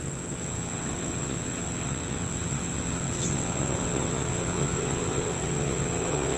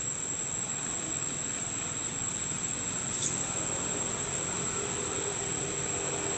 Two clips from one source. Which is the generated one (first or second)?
first